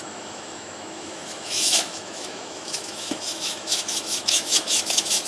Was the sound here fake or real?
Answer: fake